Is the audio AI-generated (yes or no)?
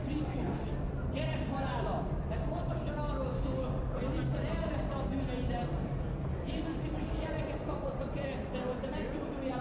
no